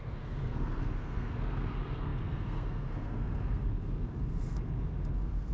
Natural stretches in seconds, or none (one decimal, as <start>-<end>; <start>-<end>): none